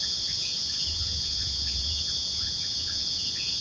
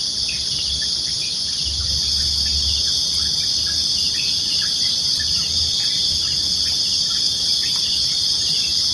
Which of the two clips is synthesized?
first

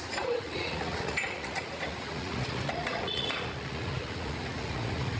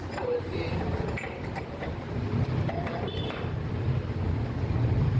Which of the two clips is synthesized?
first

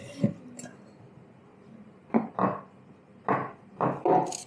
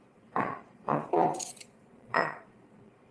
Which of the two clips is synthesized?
second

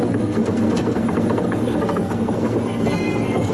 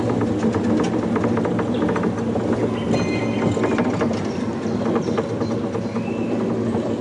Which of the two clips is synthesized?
first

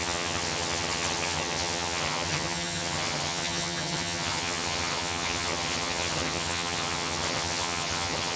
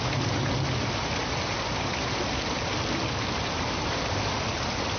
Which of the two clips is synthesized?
first